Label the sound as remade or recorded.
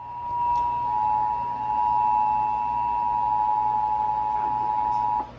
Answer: recorded